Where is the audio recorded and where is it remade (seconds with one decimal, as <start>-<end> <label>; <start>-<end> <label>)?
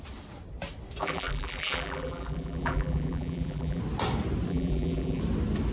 0.0-1.0 recorded; 1.0-3.8 remade; 3.8-4.5 recorded; 4.5-5.2 remade; 5.2-5.7 recorded